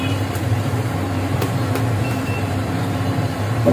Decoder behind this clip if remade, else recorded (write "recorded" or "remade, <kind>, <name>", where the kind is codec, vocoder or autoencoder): remade, vocoder, BigVGAN v2